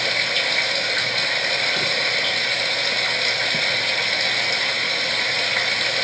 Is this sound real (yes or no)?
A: yes